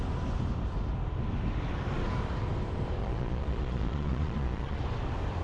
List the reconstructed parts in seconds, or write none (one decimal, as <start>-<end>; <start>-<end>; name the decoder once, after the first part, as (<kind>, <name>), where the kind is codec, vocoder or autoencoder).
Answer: 3.0-4.8 (vocoder, Vocos)

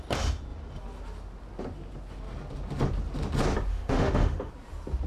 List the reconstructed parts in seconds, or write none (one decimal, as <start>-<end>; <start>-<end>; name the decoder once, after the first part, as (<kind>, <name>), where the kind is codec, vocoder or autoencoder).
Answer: 3.7-4.5 (autoencoder, DAC-VAE)

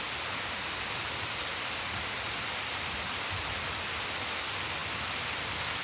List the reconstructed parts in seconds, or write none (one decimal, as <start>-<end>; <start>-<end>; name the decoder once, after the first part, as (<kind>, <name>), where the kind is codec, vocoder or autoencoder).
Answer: none

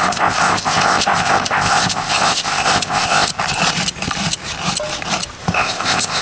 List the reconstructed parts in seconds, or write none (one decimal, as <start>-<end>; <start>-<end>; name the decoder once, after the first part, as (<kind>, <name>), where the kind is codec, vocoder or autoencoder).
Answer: 0.0-3.3 (codec, ZipCodec); 5.4-6.2

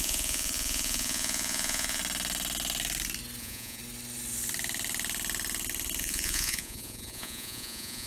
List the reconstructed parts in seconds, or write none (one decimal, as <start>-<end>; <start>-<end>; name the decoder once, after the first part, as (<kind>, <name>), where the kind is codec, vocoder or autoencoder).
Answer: 0.0-2.0 (vocoder, Vocos); 3.4-3.8; 6.0-8.1

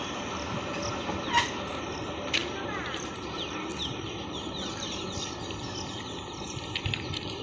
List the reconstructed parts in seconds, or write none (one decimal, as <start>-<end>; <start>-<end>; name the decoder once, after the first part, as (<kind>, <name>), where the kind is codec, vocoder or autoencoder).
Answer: 0.0-7.4 (vocoder, BigVGAN v2)

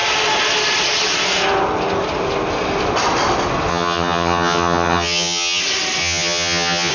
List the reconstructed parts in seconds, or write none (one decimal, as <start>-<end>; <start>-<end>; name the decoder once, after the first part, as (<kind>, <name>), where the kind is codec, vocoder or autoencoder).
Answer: 3.7-5.6 (vocoder, HiFi-GAN); 6.0-6.9